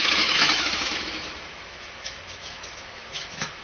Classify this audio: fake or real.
fake